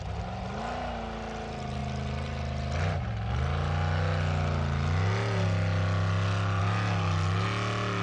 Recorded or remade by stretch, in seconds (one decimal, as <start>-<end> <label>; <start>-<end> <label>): 0.0-8.0 recorded

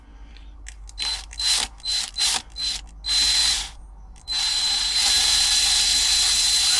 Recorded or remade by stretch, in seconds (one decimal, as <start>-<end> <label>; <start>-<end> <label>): 0.0-3.4 recorded; 3.4-6.8 remade

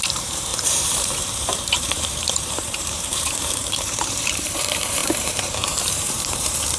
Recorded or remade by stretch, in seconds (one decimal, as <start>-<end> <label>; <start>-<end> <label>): 0.0-6.8 remade

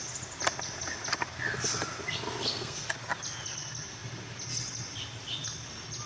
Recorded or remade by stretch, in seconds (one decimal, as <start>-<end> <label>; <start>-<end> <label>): 0.0-2.4 recorded; 2.4-2.9 remade; 2.9-6.1 recorded

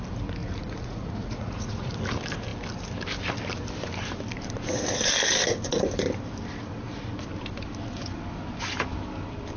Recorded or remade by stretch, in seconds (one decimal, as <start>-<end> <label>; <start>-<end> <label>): 0.0-0.4 recorded; 0.4-1.9 remade; 1.9-9.6 recorded

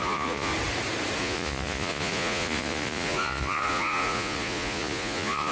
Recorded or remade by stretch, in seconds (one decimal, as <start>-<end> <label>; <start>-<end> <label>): 0.0-0.5 remade; 0.5-1.2 recorded; 1.2-5.5 remade

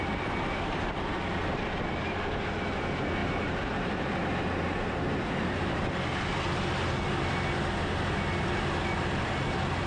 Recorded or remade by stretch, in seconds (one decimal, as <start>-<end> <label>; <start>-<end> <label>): 0.0-3.2 recorded; 3.2-5.8 remade; 5.8-9.9 recorded